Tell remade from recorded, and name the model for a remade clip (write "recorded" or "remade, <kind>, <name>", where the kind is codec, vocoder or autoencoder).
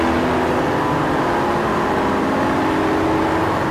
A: recorded